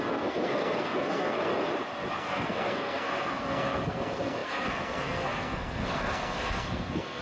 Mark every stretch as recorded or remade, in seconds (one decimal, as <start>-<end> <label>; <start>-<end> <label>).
0.0-1.5 remade; 1.5-2.1 recorded; 2.1-7.2 remade